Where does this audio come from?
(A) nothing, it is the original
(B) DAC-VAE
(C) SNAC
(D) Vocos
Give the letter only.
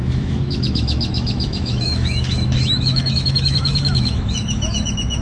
B